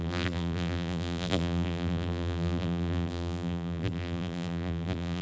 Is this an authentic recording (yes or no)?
no